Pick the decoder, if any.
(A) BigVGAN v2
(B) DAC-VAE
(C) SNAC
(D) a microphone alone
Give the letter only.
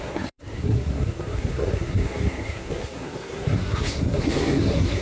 C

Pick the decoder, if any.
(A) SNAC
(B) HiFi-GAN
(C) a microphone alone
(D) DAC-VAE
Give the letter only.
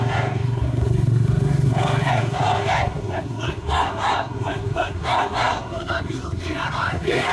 A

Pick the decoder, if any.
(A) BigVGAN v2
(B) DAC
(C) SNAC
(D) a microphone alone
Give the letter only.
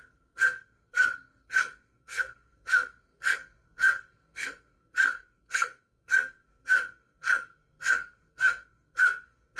C